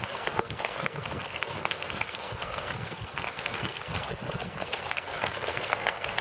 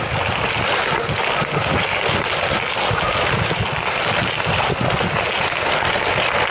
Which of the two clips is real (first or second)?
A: second